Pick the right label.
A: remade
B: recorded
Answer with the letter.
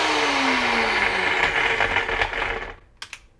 B